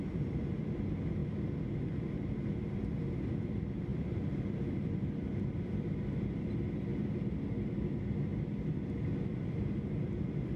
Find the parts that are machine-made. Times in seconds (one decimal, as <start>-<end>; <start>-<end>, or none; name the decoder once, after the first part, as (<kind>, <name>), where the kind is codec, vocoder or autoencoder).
0.0-1.2 (vocoder, BigVGAN v2); 2.4-8.3; 9.0-10.6